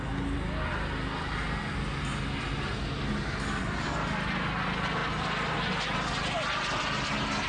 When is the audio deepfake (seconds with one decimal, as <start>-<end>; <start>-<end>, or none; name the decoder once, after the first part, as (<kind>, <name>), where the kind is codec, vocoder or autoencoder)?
none

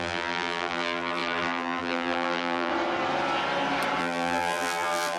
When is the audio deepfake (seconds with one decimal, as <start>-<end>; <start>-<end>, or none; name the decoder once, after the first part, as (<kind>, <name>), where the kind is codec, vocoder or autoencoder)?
0.0-2.7 (vocoder, BigVGAN v2); 4.0-5.2

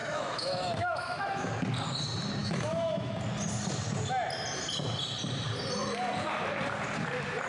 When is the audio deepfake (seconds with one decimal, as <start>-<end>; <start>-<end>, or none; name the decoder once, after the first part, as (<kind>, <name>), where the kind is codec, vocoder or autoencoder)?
0.0-1.5 (autoencoder, DAC-VAE); 2.4-3.1